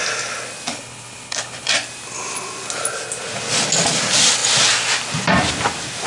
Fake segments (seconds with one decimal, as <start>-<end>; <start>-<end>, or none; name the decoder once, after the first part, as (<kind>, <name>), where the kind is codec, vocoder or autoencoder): 0.7-1.7 (codec, HILCodec)